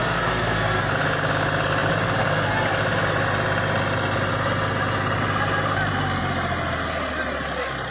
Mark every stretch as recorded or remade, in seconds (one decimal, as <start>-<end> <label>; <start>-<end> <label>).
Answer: 0.0-0.8 remade; 0.8-7.9 recorded